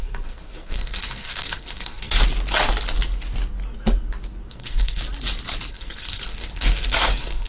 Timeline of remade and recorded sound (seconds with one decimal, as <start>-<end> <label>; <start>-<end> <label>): 0.0-2.2 remade; 2.2-4.5 recorded; 4.5-5.0 remade; 5.0-5.7 recorded; 5.7-7.5 remade